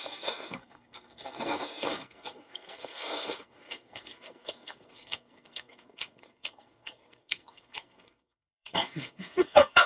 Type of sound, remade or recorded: remade